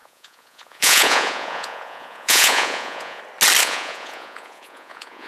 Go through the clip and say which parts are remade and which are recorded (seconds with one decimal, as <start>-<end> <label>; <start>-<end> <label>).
0.0-3.2 remade; 3.2-3.6 recorded; 3.6-5.3 remade